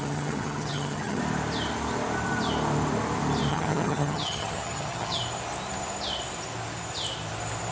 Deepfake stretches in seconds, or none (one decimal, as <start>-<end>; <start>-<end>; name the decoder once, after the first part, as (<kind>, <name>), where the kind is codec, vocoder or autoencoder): 0.0-1.2 (vocoder, HiFi-GAN); 3.5-5.2